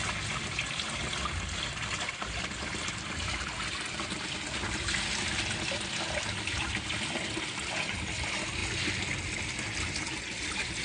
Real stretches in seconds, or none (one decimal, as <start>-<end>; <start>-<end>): 0.0-10.8